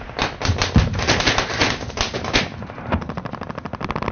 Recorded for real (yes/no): yes